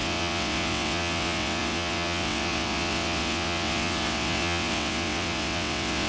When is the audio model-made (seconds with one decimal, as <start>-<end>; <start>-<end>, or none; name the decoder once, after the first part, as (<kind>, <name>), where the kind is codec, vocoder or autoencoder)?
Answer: 0.0-6.1 (vocoder, WaveNeXt)